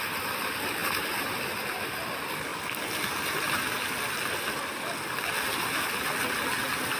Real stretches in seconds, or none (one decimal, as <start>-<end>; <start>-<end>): 0.0-0.8; 1.4-7.0